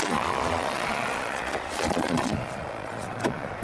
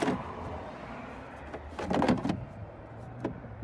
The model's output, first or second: first